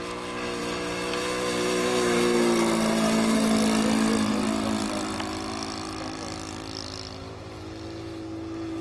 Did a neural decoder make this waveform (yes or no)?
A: no